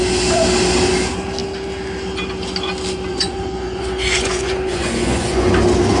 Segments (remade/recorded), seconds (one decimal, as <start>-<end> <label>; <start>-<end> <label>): 0.0-3.1 recorded; 3.1-5.5 remade; 5.5-6.0 recorded